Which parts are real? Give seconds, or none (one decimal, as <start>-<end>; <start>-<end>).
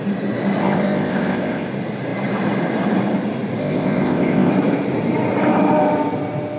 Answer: 0.0-0.6; 1.7-3.6; 4.5-6.6